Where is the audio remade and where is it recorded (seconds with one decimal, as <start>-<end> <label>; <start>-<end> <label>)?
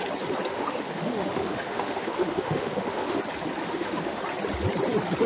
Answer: 0.0-0.5 recorded; 0.5-3.2 remade; 3.2-3.6 recorded; 3.6-4.2 remade; 4.2-5.3 recorded